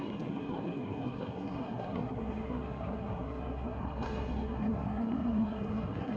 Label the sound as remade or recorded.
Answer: remade